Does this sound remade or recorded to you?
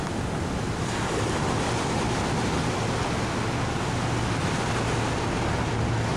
recorded